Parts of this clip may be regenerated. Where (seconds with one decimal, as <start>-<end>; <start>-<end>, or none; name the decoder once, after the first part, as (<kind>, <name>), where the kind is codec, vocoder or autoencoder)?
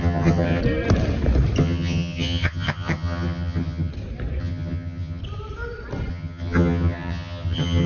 0.0-0.6 (vocoder, HiFi-GAN); 1.6-3.9; 4.4-5.2; 6.1-7.9